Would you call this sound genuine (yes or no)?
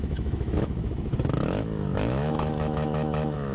no